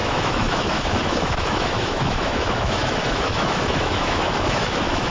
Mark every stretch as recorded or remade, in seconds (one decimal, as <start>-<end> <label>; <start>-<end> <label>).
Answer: 0.0-5.1 remade